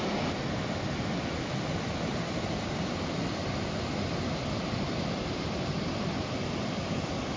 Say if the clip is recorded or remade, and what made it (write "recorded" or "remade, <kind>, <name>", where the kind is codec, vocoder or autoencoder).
remade, vocoder, BigVGAN v2